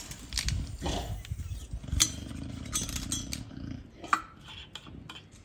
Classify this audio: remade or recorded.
recorded